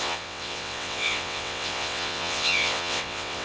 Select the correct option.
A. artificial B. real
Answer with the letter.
A